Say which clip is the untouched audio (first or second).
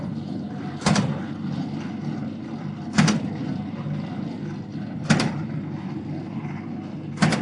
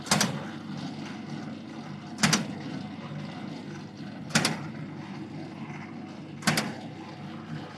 second